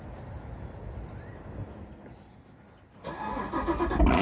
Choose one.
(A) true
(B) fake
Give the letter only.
A